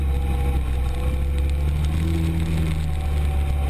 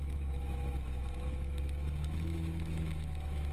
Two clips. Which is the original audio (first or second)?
first